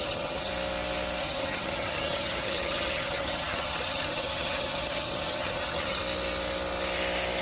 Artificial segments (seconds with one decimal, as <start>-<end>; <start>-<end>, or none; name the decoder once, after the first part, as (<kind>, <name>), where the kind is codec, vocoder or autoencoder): 0.0-0.5 (vocoder, HiFi-GAN); 1.2-6.0